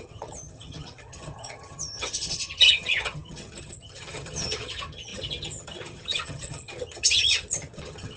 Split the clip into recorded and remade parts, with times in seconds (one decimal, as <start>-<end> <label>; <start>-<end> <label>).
0.0-8.2 remade